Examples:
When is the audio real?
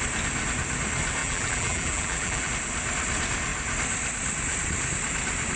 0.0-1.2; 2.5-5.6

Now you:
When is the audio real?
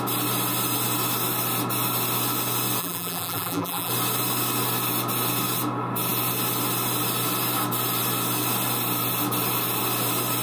0.0-2.8; 3.9-10.4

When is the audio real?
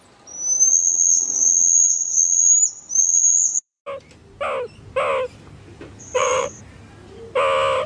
0.0-0.7; 2.5-3.0; 3.8-6.0; 6.6-7.9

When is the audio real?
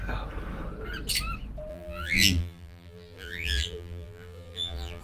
0.0-1.7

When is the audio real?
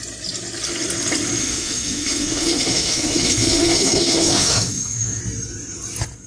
0.0-1.4; 5.2-6.3